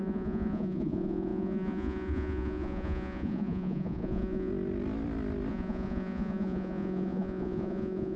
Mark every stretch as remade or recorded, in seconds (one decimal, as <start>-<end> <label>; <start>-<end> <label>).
0.0-4.5 remade; 4.5-5.5 recorded; 5.5-8.2 remade